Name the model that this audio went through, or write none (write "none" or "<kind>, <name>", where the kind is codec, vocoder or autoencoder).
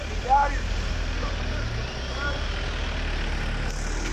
none